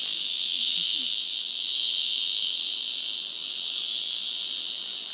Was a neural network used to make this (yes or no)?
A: yes